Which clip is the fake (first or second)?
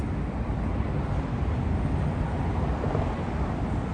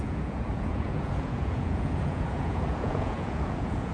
second